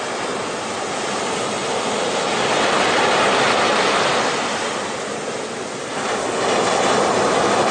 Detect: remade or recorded recorded